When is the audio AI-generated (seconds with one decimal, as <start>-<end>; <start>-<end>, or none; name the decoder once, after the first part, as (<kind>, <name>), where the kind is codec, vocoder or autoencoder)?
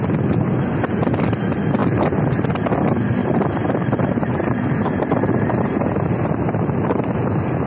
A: 3.2-7.1 (vocoder, BigVGAN v2)